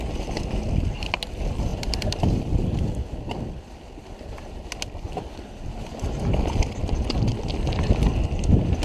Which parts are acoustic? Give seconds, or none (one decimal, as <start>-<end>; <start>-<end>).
0.0-1.7; 2.6-4.0; 4.6-8.8